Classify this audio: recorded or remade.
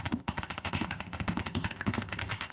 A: remade